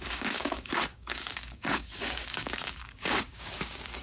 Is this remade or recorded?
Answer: remade